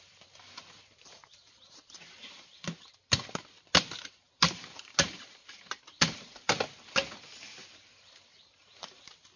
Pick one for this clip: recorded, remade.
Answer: recorded